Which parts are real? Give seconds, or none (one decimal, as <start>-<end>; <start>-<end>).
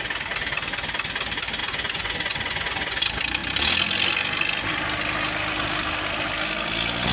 0.0-1.6; 3.0-7.1